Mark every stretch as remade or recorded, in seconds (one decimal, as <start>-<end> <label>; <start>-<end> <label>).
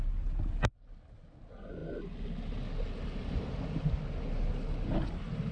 0.0-5.5 recorded